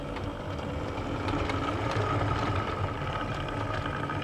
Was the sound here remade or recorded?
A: recorded